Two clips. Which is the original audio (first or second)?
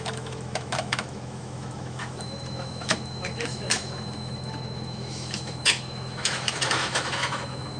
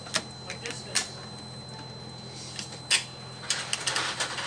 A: second